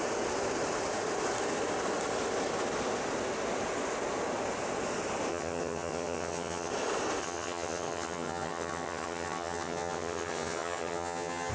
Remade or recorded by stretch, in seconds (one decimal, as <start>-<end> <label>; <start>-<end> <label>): 0.0-5.3 recorded; 5.3-6.7 remade; 6.7-7.2 recorded; 7.2-11.5 remade